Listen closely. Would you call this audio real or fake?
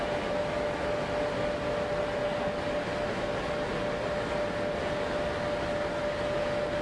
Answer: real